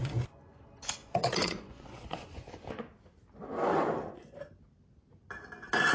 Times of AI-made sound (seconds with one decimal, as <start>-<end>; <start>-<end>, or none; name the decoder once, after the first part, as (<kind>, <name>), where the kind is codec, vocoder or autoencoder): 0.0-0.6 (vocoder, Vocos); 1.0-2.8; 3.7-4.4